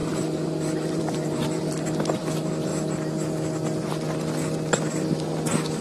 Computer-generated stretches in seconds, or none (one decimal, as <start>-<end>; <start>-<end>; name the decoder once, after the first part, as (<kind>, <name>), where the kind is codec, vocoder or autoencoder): 0.0-1.8 (vocoder, BigVGAN v2)